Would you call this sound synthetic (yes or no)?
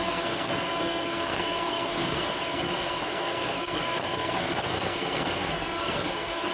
yes